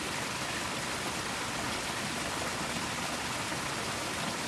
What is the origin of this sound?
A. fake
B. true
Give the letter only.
B